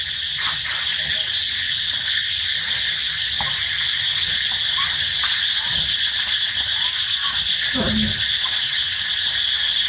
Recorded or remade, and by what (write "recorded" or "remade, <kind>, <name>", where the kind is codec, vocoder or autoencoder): recorded